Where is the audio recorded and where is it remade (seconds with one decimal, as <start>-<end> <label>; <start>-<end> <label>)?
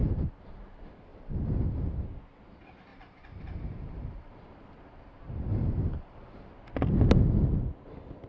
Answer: 0.0-0.6 remade; 0.6-1.1 recorded; 1.1-2.0 remade; 2.0-2.9 recorded; 2.9-4.3 remade; 4.3-5.5 recorded; 5.5-6.5 remade; 6.5-8.3 recorded